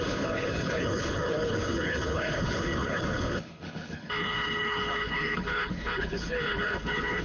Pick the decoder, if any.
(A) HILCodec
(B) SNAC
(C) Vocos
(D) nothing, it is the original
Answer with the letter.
A